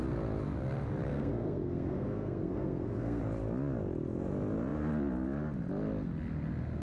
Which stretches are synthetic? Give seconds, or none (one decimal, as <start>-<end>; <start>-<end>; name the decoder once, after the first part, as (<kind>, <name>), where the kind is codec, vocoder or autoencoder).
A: 1.1-3.2 (codec, SNAC)